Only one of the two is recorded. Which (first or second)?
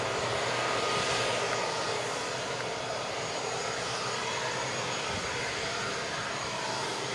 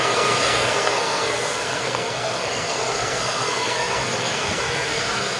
first